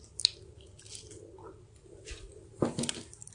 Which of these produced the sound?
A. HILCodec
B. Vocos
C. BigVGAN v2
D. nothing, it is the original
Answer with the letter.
D